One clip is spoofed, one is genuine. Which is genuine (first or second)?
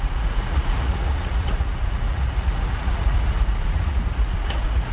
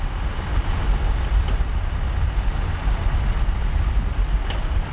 second